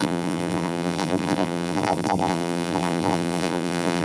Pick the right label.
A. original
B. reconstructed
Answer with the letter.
B